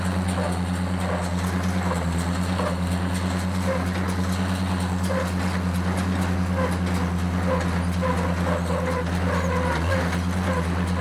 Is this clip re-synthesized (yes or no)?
no